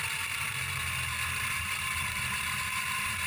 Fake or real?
fake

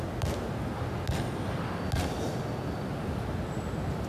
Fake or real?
real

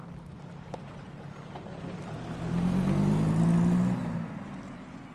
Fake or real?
real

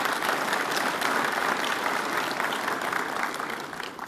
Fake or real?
real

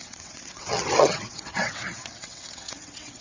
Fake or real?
fake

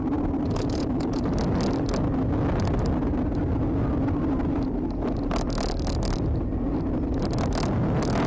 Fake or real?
real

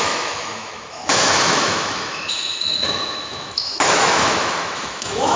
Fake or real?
fake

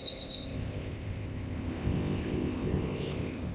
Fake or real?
fake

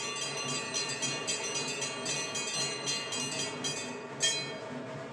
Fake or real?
real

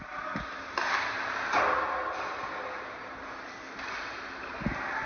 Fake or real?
real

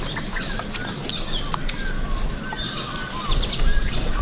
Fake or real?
real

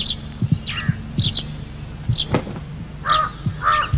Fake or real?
real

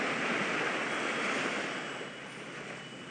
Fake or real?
real